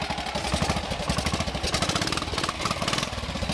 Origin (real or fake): real